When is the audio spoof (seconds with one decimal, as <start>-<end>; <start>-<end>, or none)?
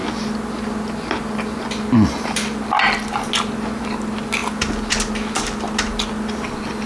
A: none